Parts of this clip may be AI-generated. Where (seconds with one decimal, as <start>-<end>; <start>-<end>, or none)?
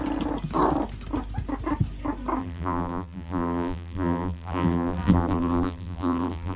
2.4-6.6